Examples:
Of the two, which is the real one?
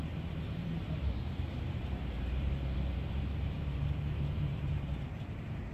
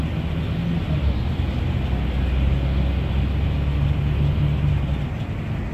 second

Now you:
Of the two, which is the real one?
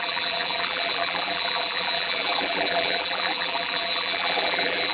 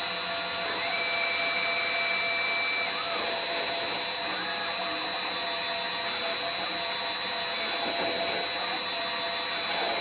second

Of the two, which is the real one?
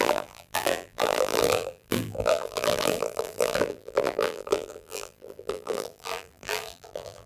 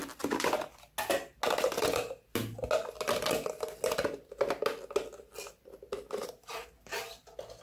second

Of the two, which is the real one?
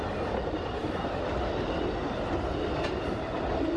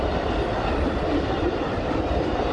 first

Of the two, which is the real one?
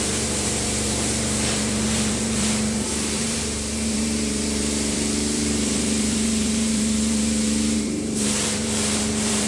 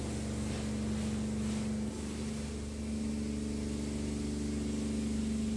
second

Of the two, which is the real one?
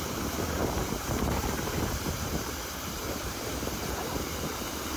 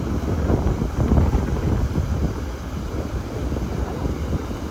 second